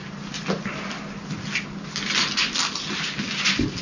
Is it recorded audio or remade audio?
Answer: recorded